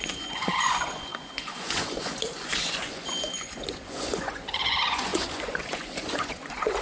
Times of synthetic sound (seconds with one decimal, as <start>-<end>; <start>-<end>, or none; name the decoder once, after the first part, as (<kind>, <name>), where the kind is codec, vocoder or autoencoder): 0.0-6.8 (vocoder, Vocos)